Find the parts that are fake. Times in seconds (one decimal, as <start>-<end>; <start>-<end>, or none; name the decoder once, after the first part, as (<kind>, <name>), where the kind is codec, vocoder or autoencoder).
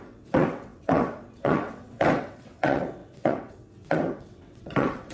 0.0-5.1 (vocoder, WaveNeXt)